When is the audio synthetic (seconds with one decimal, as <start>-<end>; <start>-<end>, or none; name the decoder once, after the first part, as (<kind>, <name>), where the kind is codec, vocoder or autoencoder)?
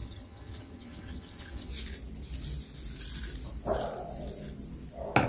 0.0-1.7 (vocoder, HiFi-GAN)